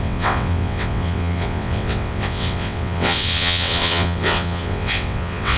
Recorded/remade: remade